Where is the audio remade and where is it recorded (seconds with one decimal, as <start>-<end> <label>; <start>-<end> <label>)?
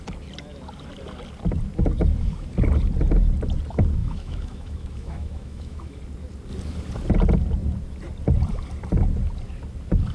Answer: 0.0-4.0 recorded; 4.0-6.0 remade; 6.0-10.1 recorded